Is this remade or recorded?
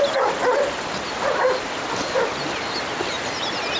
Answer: recorded